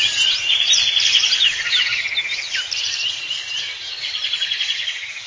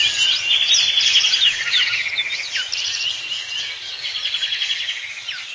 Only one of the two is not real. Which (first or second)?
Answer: first